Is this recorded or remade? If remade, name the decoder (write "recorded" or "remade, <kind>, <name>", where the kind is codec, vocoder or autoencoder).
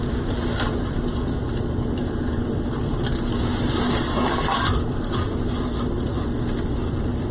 recorded